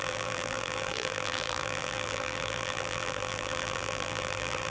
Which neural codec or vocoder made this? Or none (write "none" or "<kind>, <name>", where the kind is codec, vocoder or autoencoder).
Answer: vocoder, BigVGAN v2